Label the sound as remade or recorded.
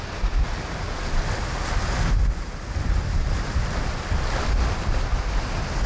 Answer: recorded